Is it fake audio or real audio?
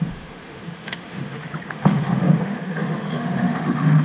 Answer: fake